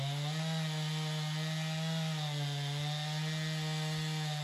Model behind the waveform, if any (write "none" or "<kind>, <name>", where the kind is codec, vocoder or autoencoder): none